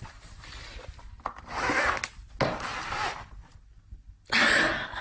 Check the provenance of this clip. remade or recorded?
recorded